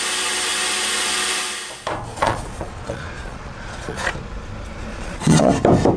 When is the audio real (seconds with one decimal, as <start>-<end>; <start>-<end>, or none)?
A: 0.0-2.1; 4.1-4.9; 5.5-6.0